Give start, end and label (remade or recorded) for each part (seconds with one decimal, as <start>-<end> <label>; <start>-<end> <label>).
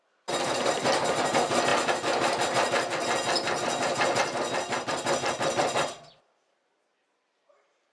0.0-7.9 recorded